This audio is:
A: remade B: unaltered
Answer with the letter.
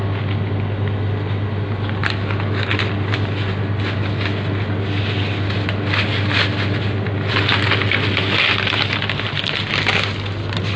B